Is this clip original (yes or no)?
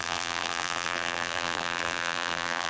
no